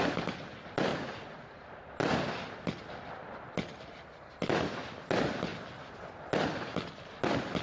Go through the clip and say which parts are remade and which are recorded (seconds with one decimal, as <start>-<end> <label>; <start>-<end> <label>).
0.0-0.9 recorded; 0.9-1.9 remade; 1.9-7.6 recorded